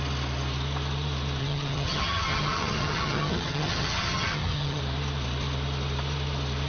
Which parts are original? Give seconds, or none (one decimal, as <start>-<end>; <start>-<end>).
0.0-1.4; 4.8-6.7